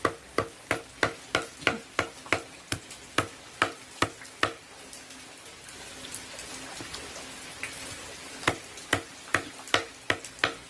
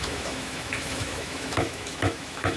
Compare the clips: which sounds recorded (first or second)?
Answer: first